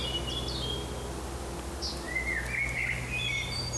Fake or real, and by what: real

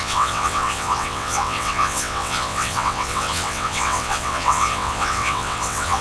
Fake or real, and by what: fake, vocoder, WaveNeXt